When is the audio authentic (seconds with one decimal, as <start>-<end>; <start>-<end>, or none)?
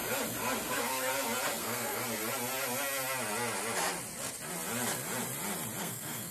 0.0-0.7; 1.1-1.6; 2.0-5.8